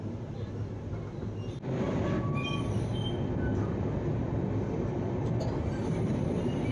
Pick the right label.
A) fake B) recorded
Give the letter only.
B